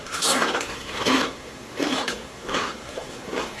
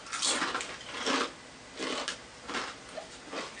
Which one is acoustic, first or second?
second